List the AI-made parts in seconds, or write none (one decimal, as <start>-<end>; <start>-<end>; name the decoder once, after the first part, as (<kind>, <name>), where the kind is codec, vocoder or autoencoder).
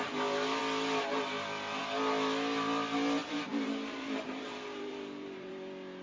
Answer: 3.2-5.5 (vocoder, BigVGAN v2)